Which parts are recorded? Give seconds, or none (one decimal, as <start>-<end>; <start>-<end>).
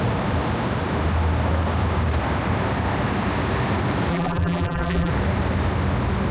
0.0-4.1; 5.1-6.3